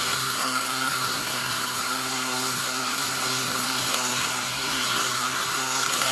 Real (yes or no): no